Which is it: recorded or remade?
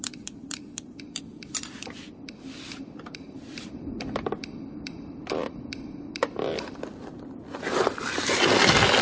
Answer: remade